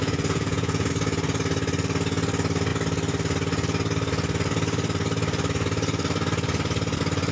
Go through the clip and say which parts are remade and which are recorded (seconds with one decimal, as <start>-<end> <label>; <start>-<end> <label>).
0.0-0.9 remade; 0.9-7.3 recorded